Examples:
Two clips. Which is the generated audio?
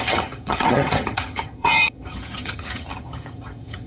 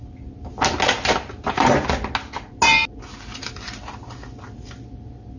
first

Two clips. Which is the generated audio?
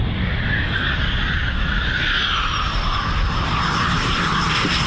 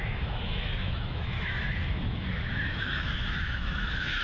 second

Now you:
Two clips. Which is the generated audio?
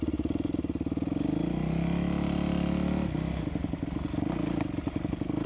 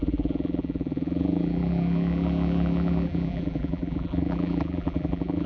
second